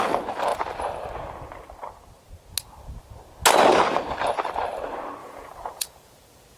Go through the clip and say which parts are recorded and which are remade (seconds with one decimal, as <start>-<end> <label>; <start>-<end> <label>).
0.0-5.2 recorded; 5.2-6.6 remade